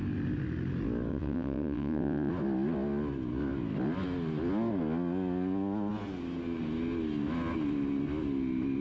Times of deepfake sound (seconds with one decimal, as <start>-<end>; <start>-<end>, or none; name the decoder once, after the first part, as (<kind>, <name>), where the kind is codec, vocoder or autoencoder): 1.1-2.3 (vocoder, WaveNeXt)